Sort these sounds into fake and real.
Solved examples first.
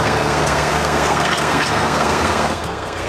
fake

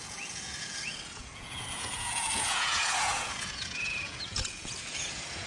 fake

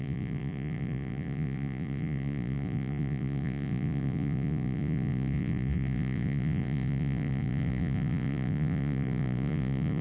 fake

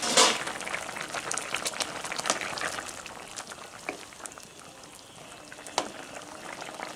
real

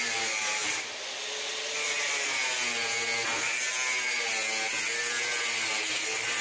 real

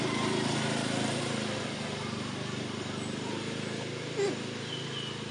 real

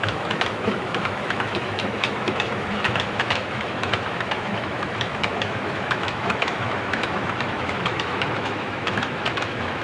fake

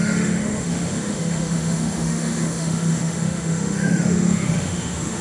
fake